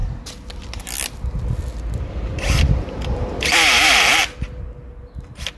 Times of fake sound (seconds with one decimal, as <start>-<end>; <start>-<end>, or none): 2.1-4.1